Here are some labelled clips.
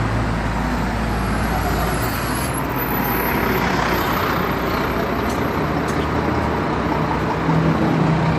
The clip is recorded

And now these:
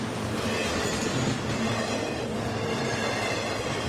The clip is recorded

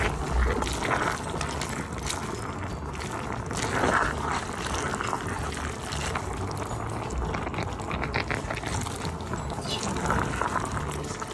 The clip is recorded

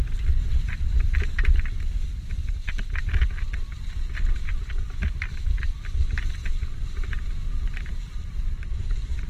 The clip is remade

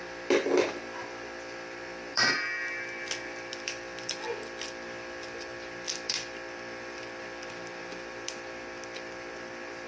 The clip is remade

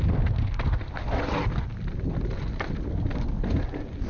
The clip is recorded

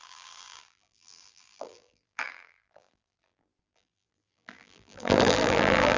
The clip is remade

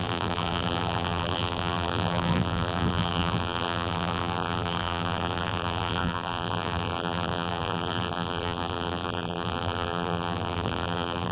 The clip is remade